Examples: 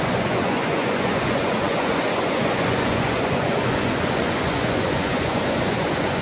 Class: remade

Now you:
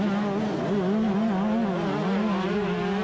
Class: recorded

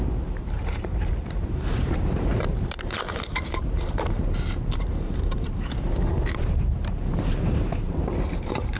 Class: remade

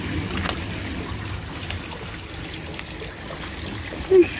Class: recorded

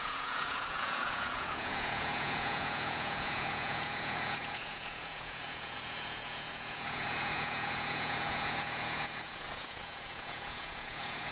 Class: remade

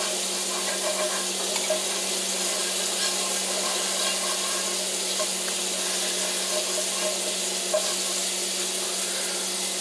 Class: recorded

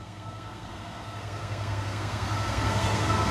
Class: remade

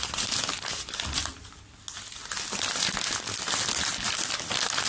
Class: recorded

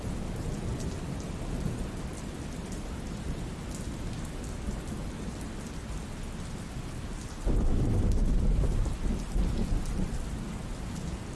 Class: recorded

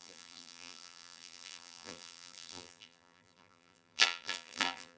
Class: remade